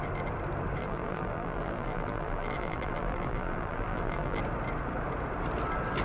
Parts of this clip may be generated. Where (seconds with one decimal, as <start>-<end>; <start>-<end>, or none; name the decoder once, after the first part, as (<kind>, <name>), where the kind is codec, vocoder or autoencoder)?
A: 0.8-4.4 (vocoder, BigVGAN v2)